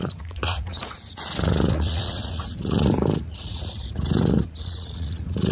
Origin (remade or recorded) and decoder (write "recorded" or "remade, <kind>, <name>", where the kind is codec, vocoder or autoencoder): remade, vocoder, Vocos